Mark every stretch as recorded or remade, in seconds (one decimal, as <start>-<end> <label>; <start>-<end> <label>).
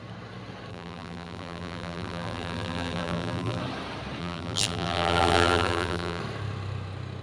0.0-0.7 recorded; 0.7-3.6 remade; 3.6-4.2 recorded; 4.2-6.2 remade; 6.2-7.2 recorded